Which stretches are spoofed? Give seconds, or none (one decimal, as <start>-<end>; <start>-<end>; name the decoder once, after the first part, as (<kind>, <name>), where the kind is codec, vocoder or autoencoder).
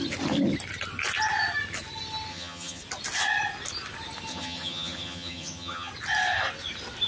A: 2.3-2.8 (vocoder, HiFi-GAN); 4.3-5.9